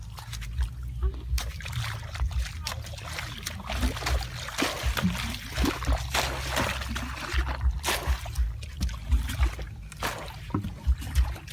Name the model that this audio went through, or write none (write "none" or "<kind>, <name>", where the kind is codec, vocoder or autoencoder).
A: none